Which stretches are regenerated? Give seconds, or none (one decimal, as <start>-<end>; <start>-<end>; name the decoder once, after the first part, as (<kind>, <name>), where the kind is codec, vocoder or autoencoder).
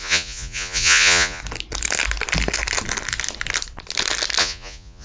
0.0-1.4 (vocoder, Vocos); 4.4-5.0